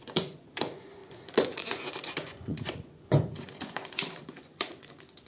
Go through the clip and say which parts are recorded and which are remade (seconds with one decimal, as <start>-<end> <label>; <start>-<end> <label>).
0.0-5.3 remade